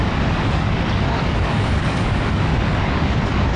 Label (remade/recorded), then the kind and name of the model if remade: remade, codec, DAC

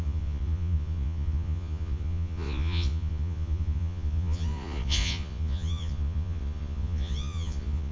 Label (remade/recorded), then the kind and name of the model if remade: remade, vocoder, Vocos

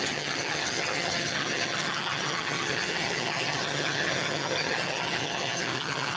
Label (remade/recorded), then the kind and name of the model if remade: remade, vocoder, HiFi-GAN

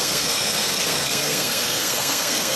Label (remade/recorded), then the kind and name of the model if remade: remade, codec, SNAC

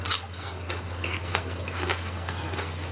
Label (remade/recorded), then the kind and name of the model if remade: remade, codec, SNAC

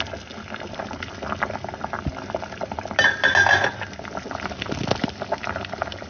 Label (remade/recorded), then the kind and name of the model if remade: recorded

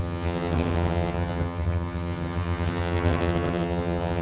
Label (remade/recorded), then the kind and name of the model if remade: remade, vocoder, HiFi-GAN